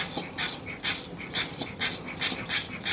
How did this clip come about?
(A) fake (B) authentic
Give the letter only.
B